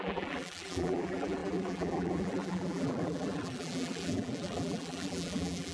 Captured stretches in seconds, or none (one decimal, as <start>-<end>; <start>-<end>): none

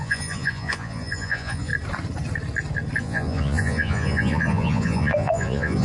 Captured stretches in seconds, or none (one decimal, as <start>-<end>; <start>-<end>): 1.7-3.0